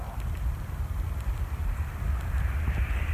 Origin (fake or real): real